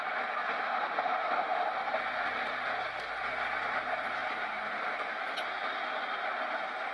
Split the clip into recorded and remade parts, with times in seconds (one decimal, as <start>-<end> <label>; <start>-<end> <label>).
0.0-1.5 recorded; 1.5-2.3 remade; 2.3-4.2 recorded; 4.2-5.6 remade; 5.6-6.9 recorded